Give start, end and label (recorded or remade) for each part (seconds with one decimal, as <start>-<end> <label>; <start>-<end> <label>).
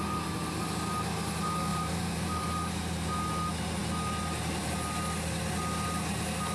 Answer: 0.0-1.7 recorded; 1.7-2.5 remade; 2.5-6.5 recorded